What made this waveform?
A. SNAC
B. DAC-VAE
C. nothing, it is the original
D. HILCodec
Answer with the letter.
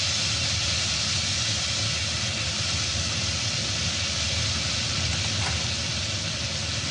C